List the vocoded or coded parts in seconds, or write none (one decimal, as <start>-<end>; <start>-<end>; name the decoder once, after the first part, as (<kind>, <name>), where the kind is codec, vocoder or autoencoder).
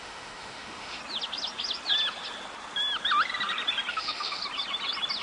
0.0-1.0 (autoencoder, DAC-VAE); 3.9-4.4